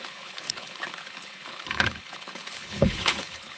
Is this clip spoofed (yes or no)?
yes